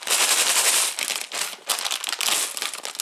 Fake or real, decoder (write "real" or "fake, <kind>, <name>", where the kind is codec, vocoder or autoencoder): real